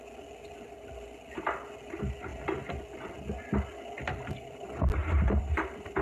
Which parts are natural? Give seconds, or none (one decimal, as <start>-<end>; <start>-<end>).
0.0-5.0